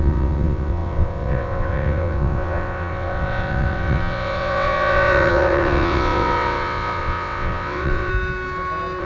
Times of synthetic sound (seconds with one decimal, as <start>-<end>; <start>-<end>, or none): 0.0-8.1